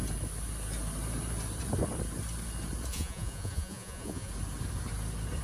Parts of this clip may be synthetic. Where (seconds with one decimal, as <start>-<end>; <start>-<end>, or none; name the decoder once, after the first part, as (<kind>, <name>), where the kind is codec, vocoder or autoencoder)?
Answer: 2.9-4.3 (vocoder, Vocos)